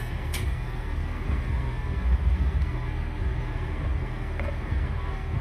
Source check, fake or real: fake